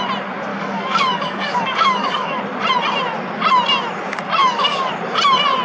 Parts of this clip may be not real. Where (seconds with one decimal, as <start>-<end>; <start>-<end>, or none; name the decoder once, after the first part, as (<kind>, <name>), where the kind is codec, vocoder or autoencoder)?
0.5-2.4 (codec, DAC); 4.4-4.9